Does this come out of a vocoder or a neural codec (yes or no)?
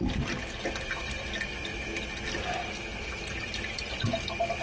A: no